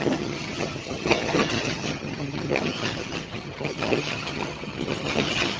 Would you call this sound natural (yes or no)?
no